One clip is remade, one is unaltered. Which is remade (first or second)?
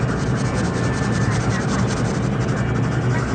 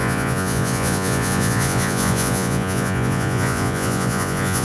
second